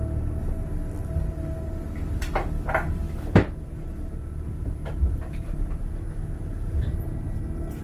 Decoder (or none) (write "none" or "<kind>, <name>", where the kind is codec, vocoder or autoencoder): none